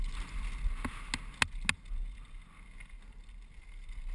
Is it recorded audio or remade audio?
recorded